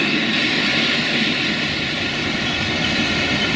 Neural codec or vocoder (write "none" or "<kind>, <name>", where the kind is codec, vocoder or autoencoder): none